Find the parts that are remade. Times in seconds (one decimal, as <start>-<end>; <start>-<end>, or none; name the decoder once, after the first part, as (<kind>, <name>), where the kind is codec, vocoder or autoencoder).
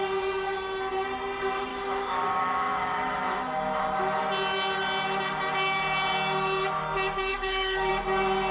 1.7-4.2 (autoencoder, DAC-VAE); 7.3-7.9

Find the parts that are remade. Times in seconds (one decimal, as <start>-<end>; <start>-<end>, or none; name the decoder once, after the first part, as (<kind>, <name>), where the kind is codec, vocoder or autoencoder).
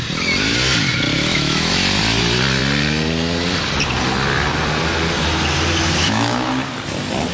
1.1-1.7 (autoencoder, DAC-VAE); 6.0-6.5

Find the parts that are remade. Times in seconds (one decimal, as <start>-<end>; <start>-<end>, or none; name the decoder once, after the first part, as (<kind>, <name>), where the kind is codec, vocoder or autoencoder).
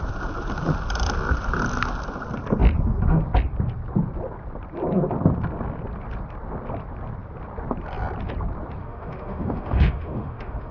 8.8-10.7 (autoencoder, DAC-VAE)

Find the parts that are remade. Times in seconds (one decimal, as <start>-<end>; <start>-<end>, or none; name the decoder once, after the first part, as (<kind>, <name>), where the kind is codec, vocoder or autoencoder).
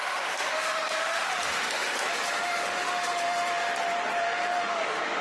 0.0-3.7 (autoencoder, DAC-VAE); 4.2-5.2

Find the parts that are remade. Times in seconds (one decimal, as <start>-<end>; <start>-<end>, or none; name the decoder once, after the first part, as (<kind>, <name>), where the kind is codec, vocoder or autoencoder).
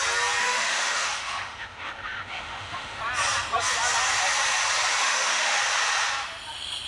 0.4-3.0 (autoencoder, DAC-VAE); 5.0-5.6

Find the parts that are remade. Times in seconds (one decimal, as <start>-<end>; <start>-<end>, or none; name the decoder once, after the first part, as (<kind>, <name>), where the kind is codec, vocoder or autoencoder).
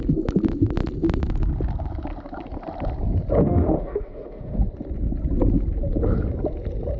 3.4-4.6 (autoencoder, DAC-VAE)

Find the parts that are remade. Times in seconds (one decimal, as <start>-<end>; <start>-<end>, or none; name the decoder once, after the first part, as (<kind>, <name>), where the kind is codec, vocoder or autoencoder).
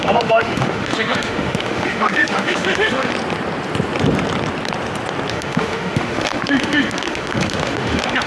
0.0-3.1 (autoencoder, DAC-VAE); 5.3-8.3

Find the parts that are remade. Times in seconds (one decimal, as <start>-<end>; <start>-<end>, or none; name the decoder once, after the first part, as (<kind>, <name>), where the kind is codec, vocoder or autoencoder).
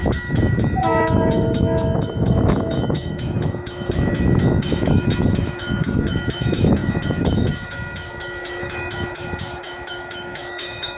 0.0-11.0 (autoencoder, DAC-VAE)